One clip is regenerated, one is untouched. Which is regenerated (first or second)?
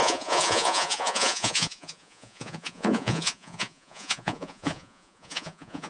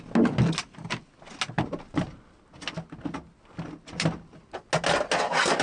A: first